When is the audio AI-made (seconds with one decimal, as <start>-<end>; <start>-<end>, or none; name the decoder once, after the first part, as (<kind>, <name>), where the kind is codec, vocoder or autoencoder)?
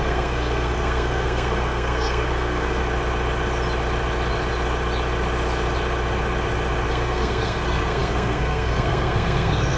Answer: 0.0-2.8 (codec, SNAC); 6.9-9.8